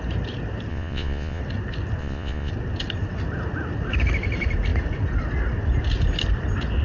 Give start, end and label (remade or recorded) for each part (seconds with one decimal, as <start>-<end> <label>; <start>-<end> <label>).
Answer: 0.0-0.7 recorded; 0.7-1.4 remade; 1.4-2.0 recorded; 2.0-2.5 remade; 2.5-6.8 recorded